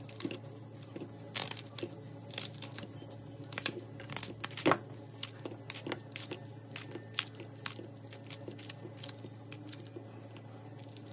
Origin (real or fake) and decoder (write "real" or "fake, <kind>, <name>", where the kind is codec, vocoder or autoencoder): real